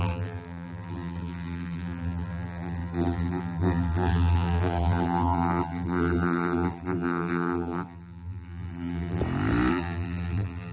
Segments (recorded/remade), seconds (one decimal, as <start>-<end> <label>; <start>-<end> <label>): 0.0-9.2 remade; 9.2-9.7 recorded; 9.7-10.7 remade